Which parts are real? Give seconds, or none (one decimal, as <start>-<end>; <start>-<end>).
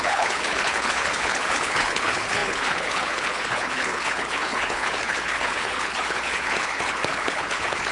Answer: none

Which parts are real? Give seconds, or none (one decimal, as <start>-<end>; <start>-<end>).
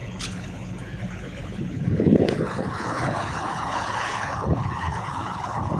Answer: none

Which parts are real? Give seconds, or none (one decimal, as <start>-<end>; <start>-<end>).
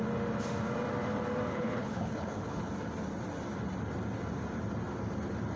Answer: 0.0-1.5; 2.7-5.6